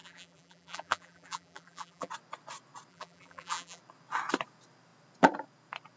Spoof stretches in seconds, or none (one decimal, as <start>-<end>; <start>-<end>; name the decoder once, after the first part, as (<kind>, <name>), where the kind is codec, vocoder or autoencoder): 0.0-2.1 (vocoder, BigVGAN v2); 2.9-3.8